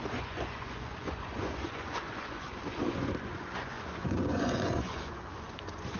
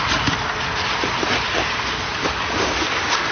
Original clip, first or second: second